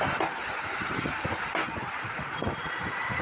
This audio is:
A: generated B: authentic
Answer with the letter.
B